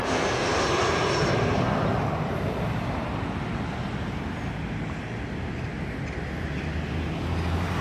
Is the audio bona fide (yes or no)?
yes